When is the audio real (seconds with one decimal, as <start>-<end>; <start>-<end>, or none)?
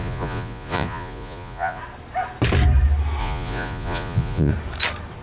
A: 1.8-3.2; 4.5-5.2